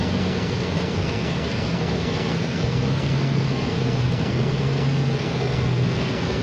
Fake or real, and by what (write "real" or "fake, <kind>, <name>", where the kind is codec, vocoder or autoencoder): fake, codec, SNAC